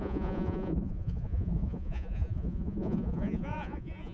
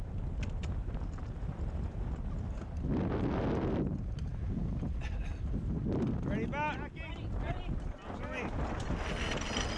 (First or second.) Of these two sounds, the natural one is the second